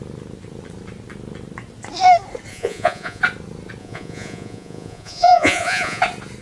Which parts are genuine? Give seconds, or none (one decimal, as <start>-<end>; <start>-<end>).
0.0-2.5; 3.2-3.8; 6.0-6.4